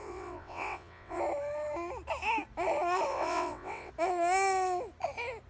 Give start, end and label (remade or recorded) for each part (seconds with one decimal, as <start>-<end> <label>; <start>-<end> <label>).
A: 0.0-1.2 remade; 1.2-3.1 recorded; 3.1-3.9 remade; 3.9-5.5 recorded